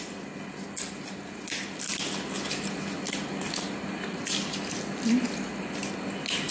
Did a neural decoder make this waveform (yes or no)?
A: no